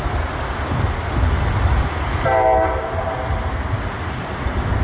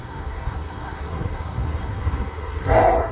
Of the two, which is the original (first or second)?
first